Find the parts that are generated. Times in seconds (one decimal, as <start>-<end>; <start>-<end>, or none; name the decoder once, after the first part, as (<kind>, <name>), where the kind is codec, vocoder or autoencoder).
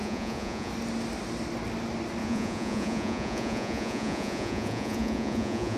0.0-0.7 (vocoder, Vocos); 2.2-5.8